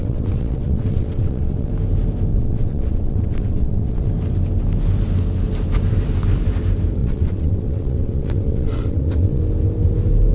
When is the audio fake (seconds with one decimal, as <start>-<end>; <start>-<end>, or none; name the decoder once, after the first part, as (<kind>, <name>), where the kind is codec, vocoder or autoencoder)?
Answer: 0.0-1.7 (vocoder, WaveNeXt); 2.3-4.1; 7.0-9.4